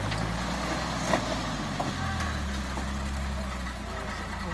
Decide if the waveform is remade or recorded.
recorded